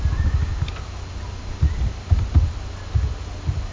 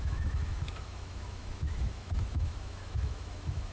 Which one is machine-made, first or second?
second